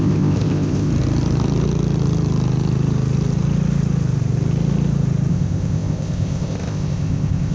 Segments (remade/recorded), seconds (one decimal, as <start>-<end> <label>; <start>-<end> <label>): 0.0-0.9 remade; 0.9-5.3 recorded; 5.3-7.5 remade